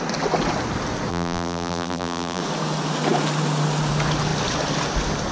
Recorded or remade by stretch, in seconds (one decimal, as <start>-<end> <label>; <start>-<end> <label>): 0.0-1.1 recorded; 1.1-2.4 remade; 2.4-5.3 recorded